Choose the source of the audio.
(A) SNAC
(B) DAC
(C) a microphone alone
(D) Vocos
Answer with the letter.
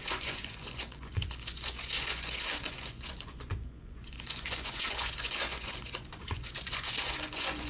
D